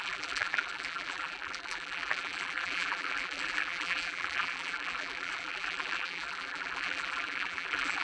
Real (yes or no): no